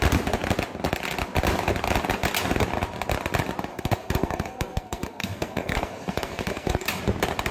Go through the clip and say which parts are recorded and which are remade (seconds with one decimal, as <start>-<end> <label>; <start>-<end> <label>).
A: 0.0-3.7 recorded; 3.7-7.0 remade; 7.0-7.5 recorded